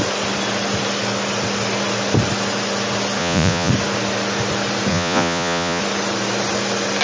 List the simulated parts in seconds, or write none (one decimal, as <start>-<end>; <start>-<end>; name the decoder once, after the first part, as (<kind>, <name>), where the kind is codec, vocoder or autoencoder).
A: 3.2-3.7 (vocoder, Vocos); 4.9-5.8